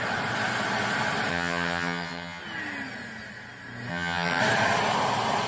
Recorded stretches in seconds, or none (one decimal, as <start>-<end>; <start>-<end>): 0.0-1.3; 2.4-3.9; 4.4-5.5